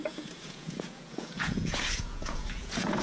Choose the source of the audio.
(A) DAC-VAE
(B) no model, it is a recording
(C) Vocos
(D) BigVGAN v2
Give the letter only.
C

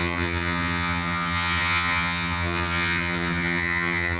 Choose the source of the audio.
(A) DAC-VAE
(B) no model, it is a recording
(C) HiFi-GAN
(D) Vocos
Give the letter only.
C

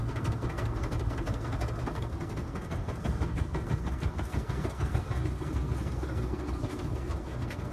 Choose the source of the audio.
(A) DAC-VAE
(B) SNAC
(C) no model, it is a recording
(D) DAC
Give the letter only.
B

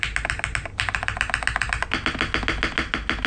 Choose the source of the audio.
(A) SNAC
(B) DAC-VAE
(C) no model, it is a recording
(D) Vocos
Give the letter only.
C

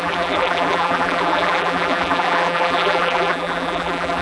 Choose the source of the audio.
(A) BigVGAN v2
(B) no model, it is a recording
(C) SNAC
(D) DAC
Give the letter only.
A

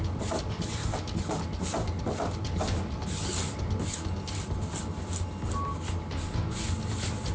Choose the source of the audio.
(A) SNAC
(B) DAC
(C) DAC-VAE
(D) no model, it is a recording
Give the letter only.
D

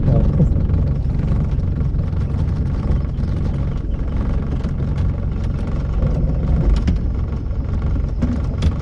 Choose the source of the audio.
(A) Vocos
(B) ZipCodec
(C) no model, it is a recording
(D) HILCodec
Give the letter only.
C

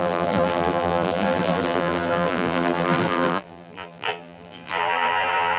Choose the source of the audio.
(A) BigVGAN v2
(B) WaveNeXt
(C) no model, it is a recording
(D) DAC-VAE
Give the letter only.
A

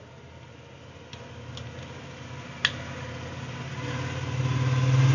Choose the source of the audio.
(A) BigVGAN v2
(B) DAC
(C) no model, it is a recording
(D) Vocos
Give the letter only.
C